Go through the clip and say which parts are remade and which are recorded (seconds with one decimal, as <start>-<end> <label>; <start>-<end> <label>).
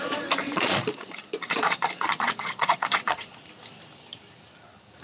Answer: 0.0-0.4 recorded; 0.4-3.4 remade; 3.4-5.0 recorded